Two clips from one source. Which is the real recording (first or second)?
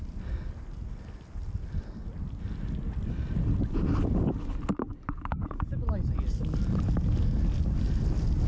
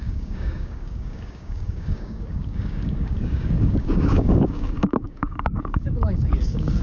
first